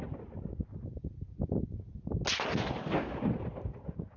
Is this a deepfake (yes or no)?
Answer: no